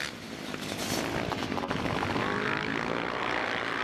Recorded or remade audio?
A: recorded